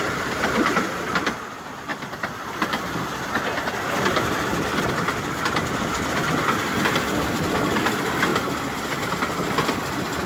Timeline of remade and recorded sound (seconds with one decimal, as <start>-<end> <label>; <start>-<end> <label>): 0.0-1.9 recorded; 1.9-4.9 remade; 4.9-8.3 recorded; 8.3-8.9 remade; 8.9-10.3 recorded